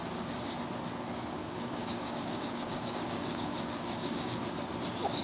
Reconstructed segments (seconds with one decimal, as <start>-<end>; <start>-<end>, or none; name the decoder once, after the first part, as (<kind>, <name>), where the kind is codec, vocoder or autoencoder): 1.4-4.5 (codec, DAC)